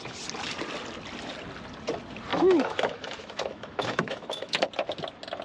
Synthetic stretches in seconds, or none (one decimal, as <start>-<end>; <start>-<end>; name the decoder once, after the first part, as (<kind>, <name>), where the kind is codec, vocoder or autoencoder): 2.3-4.6 (autoencoder, DAC-VAE)